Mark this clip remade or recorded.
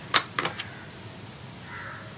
recorded